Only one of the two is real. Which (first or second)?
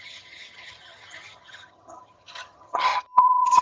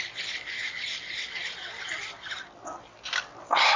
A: second